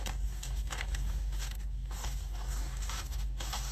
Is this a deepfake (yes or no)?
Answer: yes